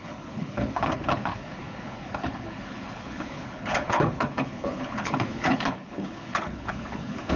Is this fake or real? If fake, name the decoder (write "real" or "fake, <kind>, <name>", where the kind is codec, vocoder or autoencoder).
fake, codec, HILCodec